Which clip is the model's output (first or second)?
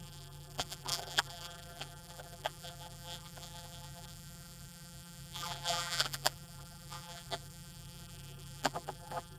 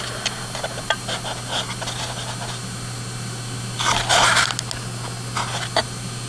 first